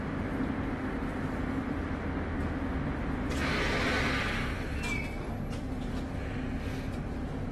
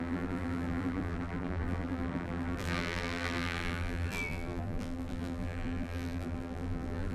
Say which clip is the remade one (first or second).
second